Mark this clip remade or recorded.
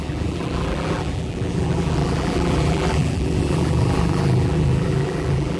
remade